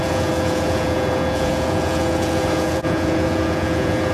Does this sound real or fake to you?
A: fake